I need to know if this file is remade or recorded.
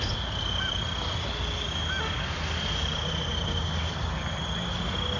recorded